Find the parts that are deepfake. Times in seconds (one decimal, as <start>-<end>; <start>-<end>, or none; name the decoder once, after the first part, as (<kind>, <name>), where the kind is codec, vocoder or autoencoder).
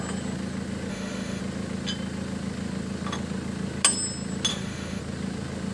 0.9-1.4 (autoencoder, DAC-VAE); 4.5-5.0